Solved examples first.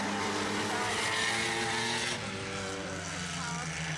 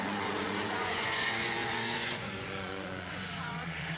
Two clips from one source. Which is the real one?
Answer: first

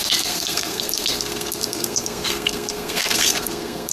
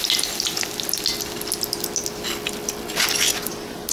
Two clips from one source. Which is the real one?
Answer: second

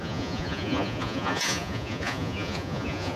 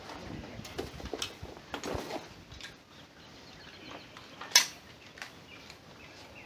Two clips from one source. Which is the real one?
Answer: second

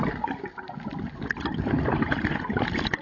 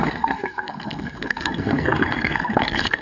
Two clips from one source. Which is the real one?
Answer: first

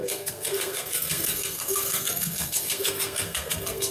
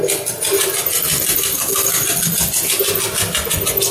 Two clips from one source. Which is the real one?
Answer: second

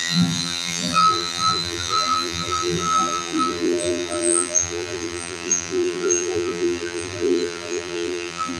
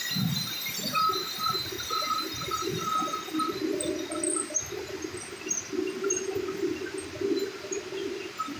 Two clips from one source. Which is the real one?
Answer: second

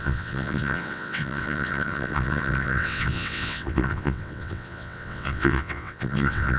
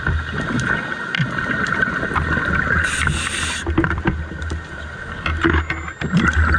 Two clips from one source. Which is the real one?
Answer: second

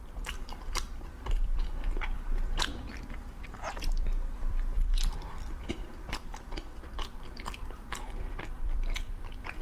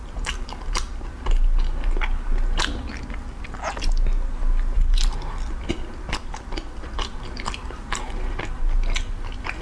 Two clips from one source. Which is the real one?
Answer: second